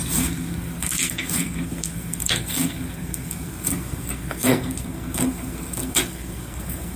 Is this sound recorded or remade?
remade